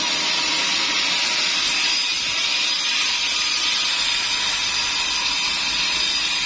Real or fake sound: real